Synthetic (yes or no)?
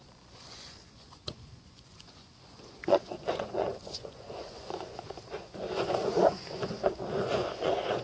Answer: yes